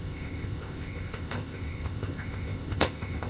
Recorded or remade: remade